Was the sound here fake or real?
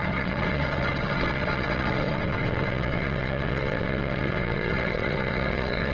fake